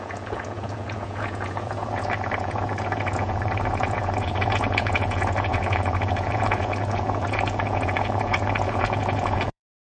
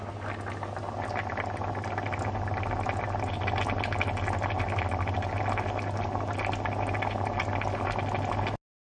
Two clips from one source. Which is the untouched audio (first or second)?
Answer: second